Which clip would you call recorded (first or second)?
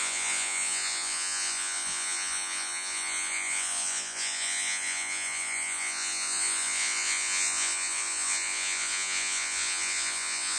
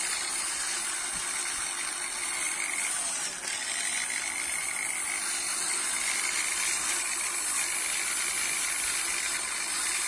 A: second